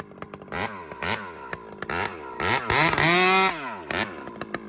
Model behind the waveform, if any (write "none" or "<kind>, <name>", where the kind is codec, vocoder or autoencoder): none